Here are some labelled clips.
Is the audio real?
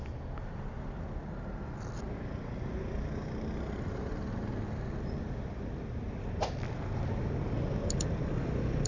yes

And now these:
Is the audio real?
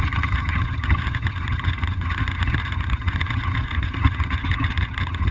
no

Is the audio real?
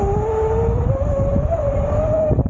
yes